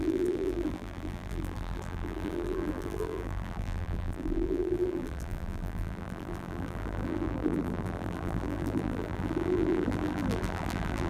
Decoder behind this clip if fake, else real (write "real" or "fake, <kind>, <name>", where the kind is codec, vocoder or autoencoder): fake, vocoder, BigVGAN v2